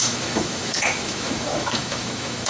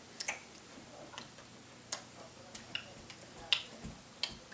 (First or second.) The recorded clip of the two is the second